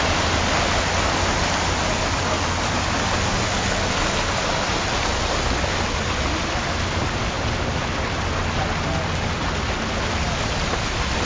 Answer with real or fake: real